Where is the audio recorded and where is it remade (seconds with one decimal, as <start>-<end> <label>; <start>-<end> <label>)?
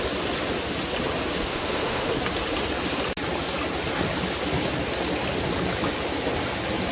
0.0-1.5 recorded; 1.5-2.1 remade; 2.1-6.9 recorded